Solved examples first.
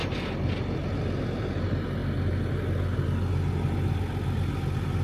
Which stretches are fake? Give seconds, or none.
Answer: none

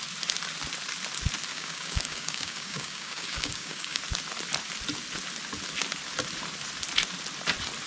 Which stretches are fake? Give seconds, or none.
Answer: 1.5-4.0 (codec, DAC)

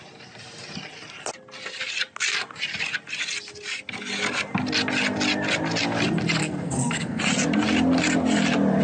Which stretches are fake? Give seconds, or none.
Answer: 6.4-7.2 (codec, SNAC)